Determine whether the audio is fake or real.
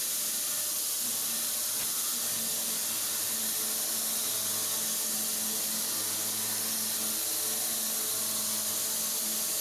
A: real